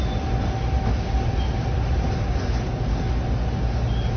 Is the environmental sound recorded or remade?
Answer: recorded